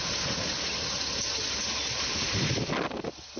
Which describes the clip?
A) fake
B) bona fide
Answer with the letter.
B